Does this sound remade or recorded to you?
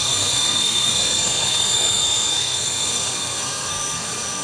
remade